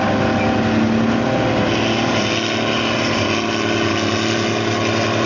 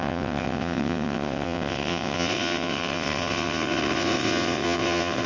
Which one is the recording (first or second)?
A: first